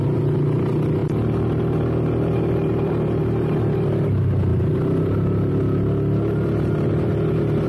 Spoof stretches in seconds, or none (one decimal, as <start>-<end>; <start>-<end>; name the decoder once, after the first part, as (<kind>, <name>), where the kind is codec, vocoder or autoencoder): none